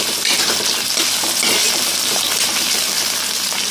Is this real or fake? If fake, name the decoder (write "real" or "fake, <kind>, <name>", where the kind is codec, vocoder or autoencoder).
real